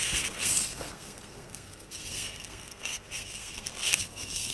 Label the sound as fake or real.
fake